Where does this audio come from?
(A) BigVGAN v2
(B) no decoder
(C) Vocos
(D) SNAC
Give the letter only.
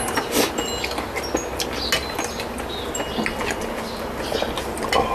B